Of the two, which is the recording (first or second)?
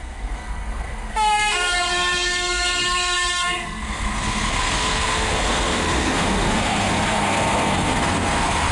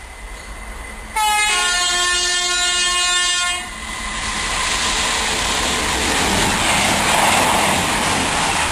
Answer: second